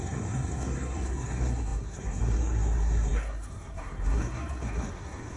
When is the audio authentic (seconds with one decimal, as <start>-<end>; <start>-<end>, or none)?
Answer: none